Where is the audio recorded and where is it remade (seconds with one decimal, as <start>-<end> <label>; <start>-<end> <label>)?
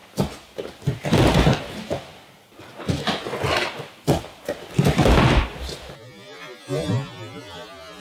0.0-8.0 recorded